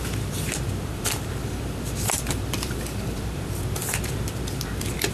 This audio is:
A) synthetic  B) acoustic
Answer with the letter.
A